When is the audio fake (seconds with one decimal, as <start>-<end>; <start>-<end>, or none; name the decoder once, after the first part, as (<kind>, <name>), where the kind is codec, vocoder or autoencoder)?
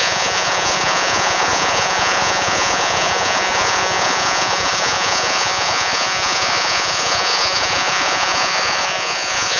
0.0-9.6 (vocoder, Vocos)